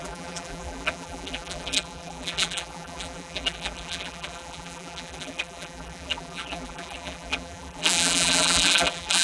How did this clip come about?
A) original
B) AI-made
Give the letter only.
B